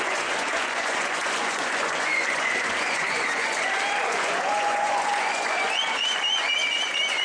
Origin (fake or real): fake